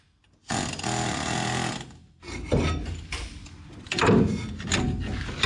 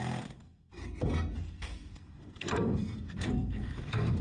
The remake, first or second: second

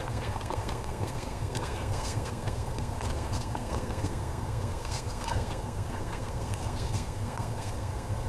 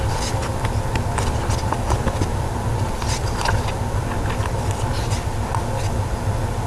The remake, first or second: first